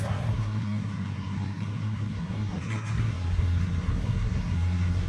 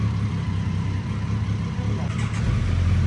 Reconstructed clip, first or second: first